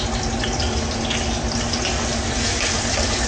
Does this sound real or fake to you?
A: real